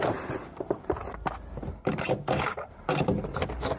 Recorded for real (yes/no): no